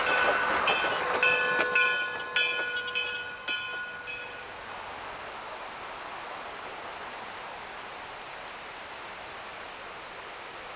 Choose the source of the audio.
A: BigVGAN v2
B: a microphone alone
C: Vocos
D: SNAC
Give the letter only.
B